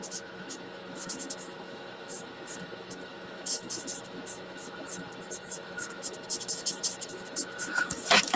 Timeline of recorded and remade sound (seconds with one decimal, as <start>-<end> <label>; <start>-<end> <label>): 0.0-8.4 remade